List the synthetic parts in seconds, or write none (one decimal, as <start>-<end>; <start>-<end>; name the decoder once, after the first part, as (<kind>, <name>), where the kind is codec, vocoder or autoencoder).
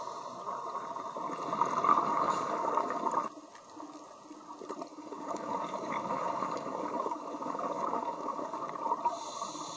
1.9-3.1 (codec, DAC); 4.9-8.7